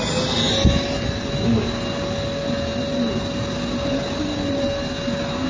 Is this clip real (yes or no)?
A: yes